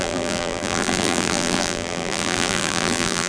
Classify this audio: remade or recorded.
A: remade